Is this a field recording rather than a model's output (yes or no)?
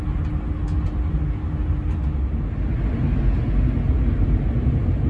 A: yes